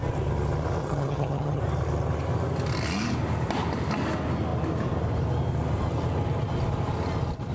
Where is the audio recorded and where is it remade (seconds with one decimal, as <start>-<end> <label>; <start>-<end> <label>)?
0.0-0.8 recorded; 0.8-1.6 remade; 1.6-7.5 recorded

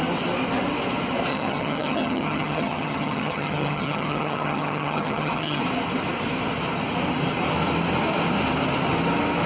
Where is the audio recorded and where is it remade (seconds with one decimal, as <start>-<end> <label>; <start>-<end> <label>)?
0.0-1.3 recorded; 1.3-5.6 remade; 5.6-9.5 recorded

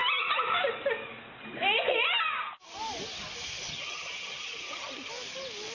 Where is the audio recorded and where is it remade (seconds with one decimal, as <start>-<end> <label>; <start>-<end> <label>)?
0.0-3.7 recorded; 3.7-5.1 remade; 5.1-5.7 recorded